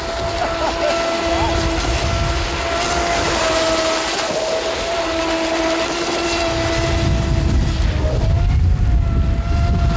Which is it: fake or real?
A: real